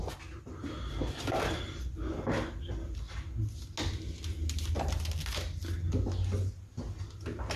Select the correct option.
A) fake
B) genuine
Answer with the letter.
B